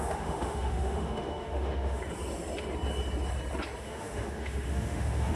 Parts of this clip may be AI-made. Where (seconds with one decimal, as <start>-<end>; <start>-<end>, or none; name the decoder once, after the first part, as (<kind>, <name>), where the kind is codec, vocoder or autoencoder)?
0.0-2.0 (autoencoder, DAC-VAE); 3.8-5.4